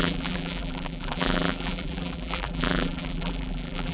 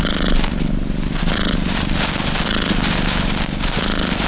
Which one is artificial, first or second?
first